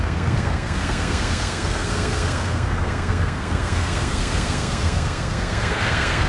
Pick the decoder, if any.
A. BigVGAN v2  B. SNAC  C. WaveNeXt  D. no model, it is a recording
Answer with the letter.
B